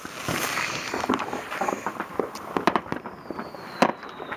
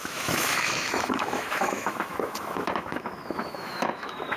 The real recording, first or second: first